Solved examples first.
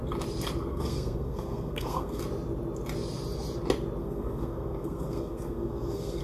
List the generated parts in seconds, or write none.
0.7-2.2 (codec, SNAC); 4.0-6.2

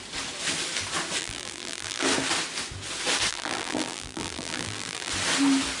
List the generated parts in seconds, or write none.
1.2-2.0 (vocoder, BigVGAN v2); 3.3-5.1

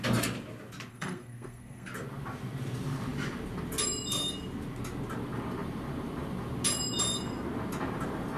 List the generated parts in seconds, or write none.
0.9-1.9 (codec, SNAC)

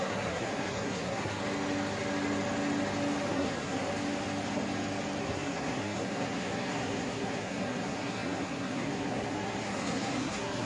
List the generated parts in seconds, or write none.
0.0-1.4 (codec, SNAC); 3.3-3.9; 5.2-10.7

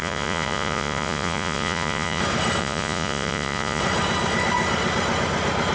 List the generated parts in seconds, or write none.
0.0-2.2 (vocoder, Vocos); 2.6-3.8